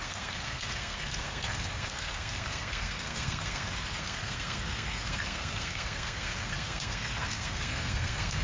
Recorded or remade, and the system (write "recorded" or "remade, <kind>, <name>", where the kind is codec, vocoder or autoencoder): remade, codec, SNAC